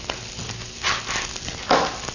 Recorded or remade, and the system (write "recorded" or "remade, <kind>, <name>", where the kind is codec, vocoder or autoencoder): recorded